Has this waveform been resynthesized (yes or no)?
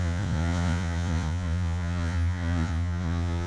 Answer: yes